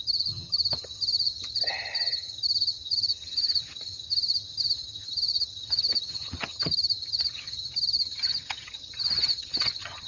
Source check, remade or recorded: remade